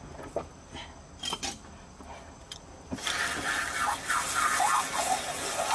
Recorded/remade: recorded